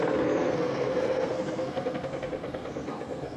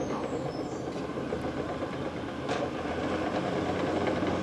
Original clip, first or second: second